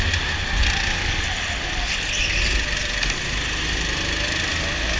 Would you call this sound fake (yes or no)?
no